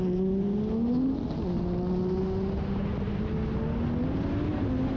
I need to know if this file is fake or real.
real